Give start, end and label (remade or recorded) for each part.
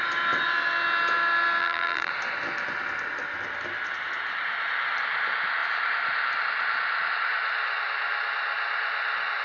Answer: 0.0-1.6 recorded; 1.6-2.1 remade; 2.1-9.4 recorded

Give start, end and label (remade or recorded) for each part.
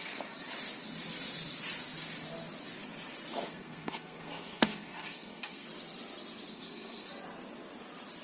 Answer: 0.0-3.3 recorded; 3.3-5.7 remade; 5.7-6.5 recorded; 6.5-7.1 remade; 7.1-8.2 recorded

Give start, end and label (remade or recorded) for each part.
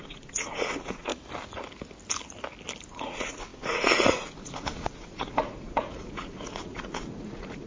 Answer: 0.0-1.1 remade; 1.1-2.9 recorded; 2.9-7.7 remade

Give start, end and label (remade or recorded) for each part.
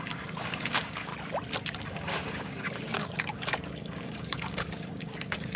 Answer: 0.0-1.1 remade; 1.1-1.9 recorded; 1.9-5.6 remade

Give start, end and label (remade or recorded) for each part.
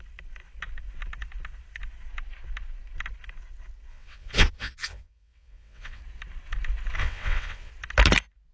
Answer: 0.0-3.9 recorded; 3.9-6.0 remade; 6.0-7.0 recorded; 7.0-7.7 remade; 7.7-8.5 recorded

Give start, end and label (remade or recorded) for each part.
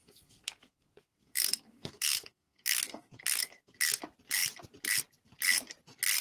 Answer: 0.0-3.7 remade; 3.7-6.2 recorded